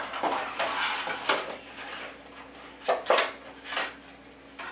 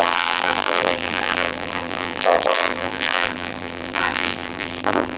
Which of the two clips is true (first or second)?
first